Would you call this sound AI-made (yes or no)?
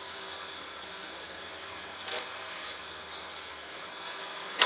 yes